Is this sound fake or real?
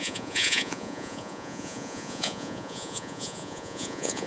fake